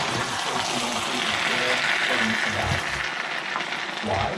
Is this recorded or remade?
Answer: recorded